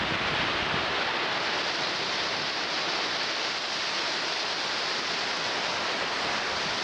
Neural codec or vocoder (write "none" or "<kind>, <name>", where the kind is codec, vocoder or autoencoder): none